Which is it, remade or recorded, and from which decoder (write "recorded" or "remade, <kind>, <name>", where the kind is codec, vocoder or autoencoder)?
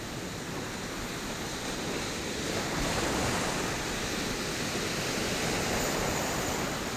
recorded